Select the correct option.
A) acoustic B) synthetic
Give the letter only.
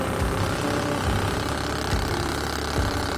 A